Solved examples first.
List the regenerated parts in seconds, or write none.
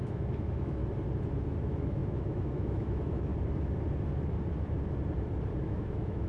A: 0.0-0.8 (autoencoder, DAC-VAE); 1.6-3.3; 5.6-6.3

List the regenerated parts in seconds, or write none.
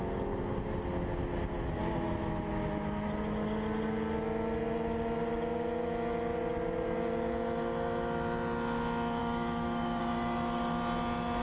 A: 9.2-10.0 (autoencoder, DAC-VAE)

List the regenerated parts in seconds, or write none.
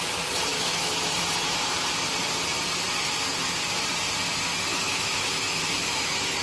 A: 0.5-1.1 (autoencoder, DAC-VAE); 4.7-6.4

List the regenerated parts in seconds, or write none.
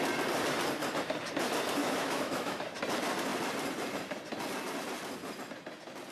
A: 1.8-2.6 (autoencoder, DAC-VAE)